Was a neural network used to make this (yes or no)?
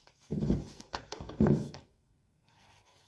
yes